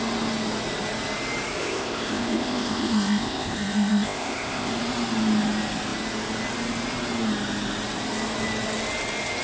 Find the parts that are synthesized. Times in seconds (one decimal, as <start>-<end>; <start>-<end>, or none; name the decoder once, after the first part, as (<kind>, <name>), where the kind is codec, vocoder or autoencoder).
1.6-4.7 (codec, ZipCodec)